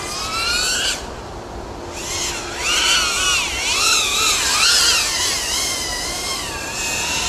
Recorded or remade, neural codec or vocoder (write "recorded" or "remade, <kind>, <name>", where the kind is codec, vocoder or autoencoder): recorded